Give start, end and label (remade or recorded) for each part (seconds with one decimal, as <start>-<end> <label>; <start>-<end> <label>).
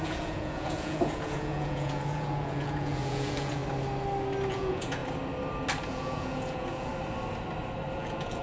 0.0-3.6 remade; 3.6-4.5 recorded; 4.5-5.0 remade; 5.0-5.9 recorded; 5.9-6.9 remade; 6.9-7.9 recorded; 7.9-8.4 remade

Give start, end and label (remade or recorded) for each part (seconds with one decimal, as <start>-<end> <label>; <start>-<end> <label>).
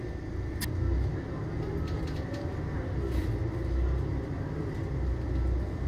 0.0-5.9 recorded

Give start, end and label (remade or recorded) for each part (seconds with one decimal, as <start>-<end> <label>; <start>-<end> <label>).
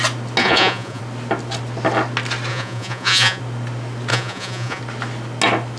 0.0-0.4 recorded; 0.4-1.0 remade; 1.0-2.5 recorded; 2.5-3.4 remade; 3.4-4.1 recorded; 4.1-4.8 remade; 4.8-5.8 recorded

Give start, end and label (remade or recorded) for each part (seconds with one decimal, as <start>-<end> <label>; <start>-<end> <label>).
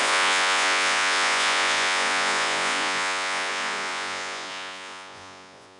0.0-5.8 remade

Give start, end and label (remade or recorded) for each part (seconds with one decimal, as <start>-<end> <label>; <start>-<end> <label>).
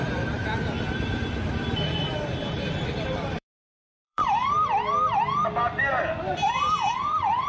0.0-0.4 remade; 0.4-2.4 recorded; 2.4-4.2 remade; 4.2-6.6 recorded; 6.6-7.5 remade